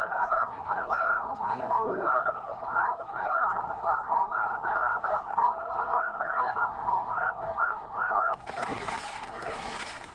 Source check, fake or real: fake